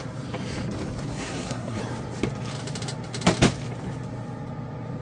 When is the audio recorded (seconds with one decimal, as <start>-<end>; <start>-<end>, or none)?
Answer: 0.0-1.1; 1.8-5.0